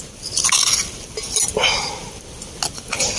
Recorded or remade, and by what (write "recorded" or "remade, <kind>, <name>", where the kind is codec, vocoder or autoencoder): recorded